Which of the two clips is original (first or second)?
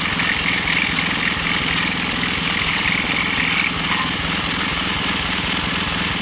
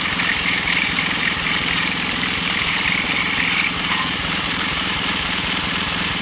first